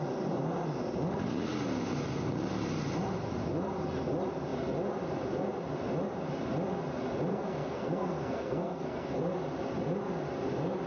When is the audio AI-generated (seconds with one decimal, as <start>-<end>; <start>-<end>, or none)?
7.3-9.2